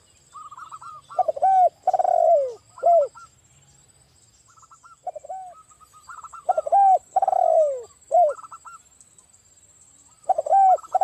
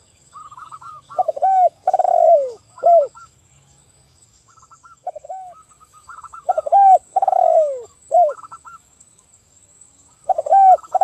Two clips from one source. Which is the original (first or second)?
first